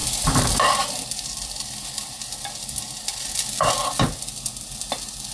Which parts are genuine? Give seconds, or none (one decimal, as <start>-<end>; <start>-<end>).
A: 0.0-5.3